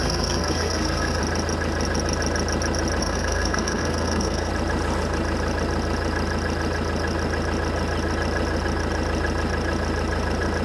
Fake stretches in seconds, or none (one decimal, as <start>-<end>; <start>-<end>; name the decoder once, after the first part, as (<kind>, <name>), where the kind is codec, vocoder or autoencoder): 0.0-1.2 (codec, SNAC); 3.0-4.5